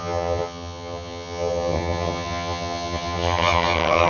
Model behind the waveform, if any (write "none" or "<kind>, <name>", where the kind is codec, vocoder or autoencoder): vocoder, HiFi-GAN